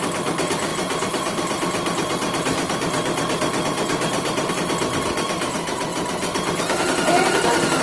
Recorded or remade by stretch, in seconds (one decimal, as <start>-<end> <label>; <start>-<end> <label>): 0.0-5.9 remade; 5.9-7.8 recorded